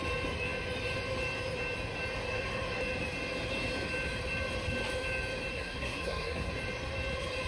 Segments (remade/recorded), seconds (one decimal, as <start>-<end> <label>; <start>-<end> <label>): 0.0-5.5 recorded; 5.5-6.5 remade; 6.5-7.5 recorded